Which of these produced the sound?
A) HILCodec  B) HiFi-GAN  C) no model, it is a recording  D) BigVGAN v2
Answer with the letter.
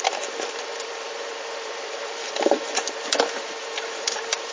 D